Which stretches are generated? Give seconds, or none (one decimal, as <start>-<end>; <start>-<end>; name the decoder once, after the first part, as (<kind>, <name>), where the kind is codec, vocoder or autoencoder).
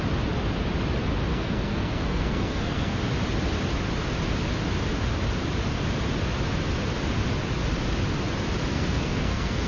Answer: 1.3-3.0 (codec, SNAC); 8.7-9.7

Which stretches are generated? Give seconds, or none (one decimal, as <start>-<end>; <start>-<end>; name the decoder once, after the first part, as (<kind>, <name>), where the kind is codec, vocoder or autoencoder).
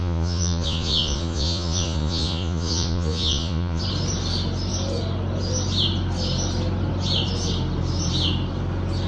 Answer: 0.0-3.8 (vocoder, Vocos)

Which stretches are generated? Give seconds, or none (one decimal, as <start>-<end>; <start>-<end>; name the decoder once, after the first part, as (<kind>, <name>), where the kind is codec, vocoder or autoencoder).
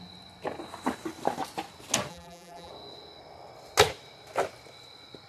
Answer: 2.1-2.7 (vocoder, BigVGAN v2)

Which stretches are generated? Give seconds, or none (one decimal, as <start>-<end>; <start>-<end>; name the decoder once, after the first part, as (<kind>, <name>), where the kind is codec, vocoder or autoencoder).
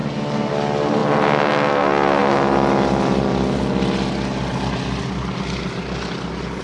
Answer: none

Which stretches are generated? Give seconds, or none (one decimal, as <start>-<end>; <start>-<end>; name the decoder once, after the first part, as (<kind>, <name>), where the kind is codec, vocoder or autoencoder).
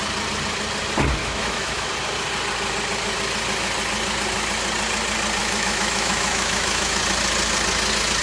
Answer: 1.2-1.9 (autoencoder, DAC-VAE); 5.4-7.0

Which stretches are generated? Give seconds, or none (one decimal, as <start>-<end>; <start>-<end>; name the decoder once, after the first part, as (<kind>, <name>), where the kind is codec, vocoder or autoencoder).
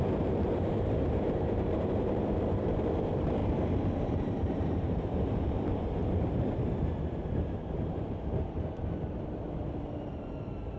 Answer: 0.0-3.4 (vocoder, BigVGAN v2); 4.0-6.0; 6.9-10.8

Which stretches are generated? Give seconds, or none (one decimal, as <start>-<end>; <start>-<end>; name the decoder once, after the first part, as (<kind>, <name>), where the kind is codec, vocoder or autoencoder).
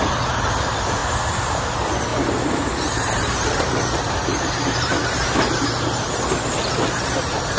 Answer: 1.0-1.6 (vocoder, BigVGAN v2); 2.1-5.7